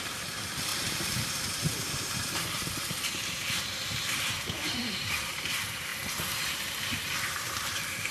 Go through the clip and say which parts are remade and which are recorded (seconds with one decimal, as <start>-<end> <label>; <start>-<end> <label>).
0.0-5.9 remade; 5.9-6.5 recorded; 6.5-8.1 remade